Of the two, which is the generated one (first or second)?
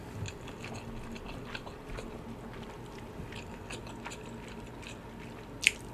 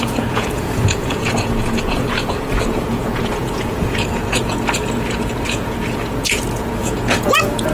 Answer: second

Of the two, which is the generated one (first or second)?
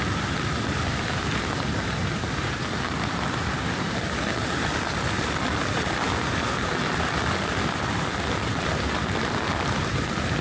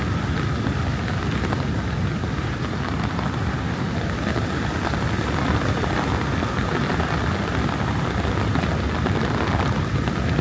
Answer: first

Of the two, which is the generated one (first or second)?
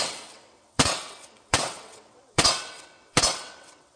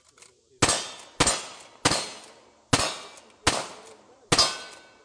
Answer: first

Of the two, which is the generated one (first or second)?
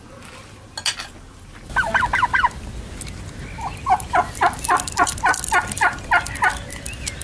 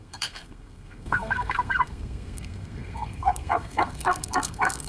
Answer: second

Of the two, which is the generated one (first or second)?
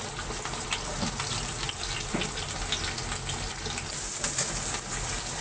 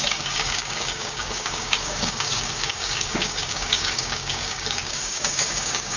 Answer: second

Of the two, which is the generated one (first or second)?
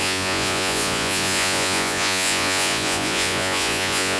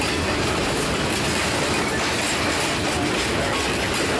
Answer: first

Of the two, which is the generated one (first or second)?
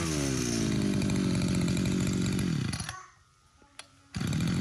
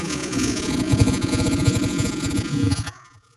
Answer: second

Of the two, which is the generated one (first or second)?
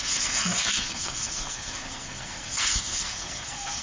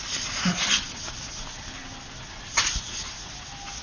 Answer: first